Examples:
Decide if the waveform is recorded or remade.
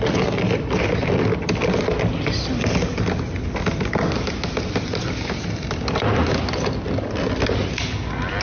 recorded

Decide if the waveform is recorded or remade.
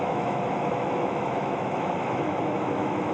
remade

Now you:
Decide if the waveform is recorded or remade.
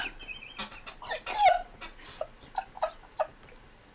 recorded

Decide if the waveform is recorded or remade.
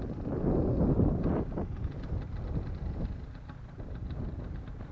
recorded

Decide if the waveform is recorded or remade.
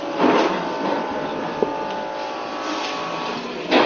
recorded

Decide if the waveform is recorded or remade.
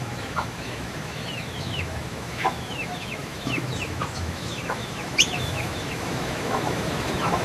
remade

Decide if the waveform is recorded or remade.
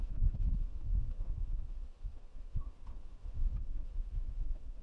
remade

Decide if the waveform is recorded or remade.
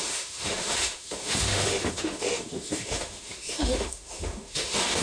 remade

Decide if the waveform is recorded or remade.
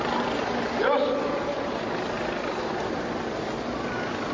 recorded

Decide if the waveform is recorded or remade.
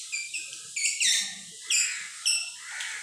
recorded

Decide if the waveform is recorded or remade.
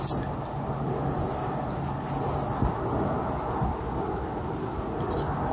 recorded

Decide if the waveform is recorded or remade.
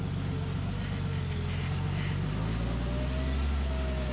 recorded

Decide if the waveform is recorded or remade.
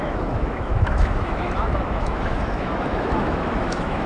remade